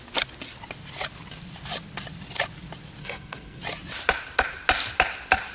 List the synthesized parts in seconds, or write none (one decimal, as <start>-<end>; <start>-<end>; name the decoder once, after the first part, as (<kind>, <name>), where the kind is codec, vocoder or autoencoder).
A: 3.0-3.6 (codec, SNAC)